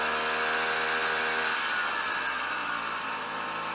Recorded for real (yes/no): yes